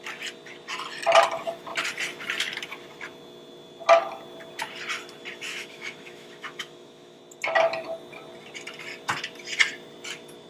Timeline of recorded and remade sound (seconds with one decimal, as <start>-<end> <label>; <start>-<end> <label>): 0.0-5.5 recorded; 5.5-7.2 remade; 7.2-10.5 recorded